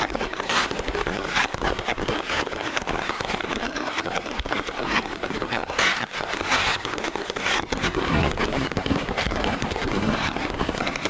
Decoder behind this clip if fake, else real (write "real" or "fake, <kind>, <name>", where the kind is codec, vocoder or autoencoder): fake, codec, SNAC